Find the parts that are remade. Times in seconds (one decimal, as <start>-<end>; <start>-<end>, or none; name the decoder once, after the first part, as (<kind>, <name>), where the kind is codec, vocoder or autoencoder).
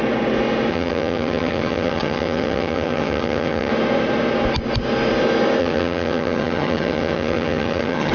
0.7-3.7 (vocoder, HiFi-GAN); 5.6-8.1